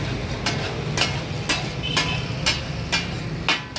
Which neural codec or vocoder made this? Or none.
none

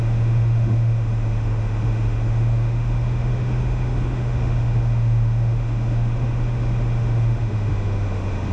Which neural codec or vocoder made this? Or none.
autoencoder, DAC-VAE